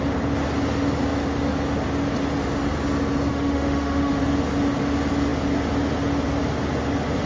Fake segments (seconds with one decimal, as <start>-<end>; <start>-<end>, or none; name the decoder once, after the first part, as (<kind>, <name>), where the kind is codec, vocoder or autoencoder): 3.3-4.2 (autoencoder, DAC-VAE)